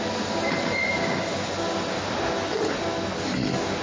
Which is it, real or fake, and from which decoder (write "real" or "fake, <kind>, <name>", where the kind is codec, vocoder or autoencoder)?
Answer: real